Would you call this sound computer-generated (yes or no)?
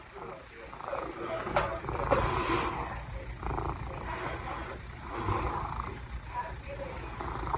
no